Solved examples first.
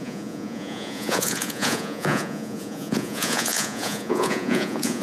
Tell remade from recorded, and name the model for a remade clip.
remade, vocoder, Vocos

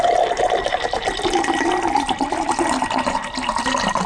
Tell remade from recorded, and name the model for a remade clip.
recorded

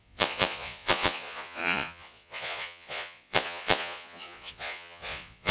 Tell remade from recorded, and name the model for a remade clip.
remade, vocoder, Vocos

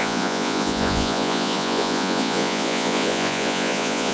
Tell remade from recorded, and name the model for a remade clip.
remade, vocoder, Vocos